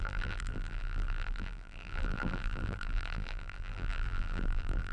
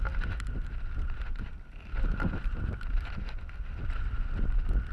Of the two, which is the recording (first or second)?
second